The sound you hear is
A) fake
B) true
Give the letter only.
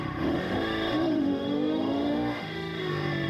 A